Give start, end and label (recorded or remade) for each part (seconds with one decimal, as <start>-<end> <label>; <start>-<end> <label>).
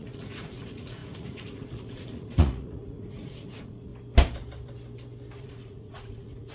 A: 0.0-3.9 remade; 3.9-5.4 recorded; 5.4-6.5 remade